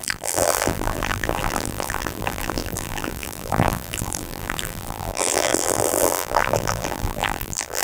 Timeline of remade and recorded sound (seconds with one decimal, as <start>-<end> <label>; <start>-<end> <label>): 0.0-7.8 remade